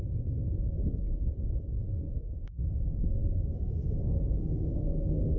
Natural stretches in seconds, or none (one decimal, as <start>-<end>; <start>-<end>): 0.0-2.1